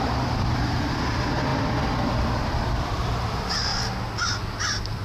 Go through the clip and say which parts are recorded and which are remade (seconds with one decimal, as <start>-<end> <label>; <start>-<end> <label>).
0.0-3.7 remade; 3.7-5.0 recorded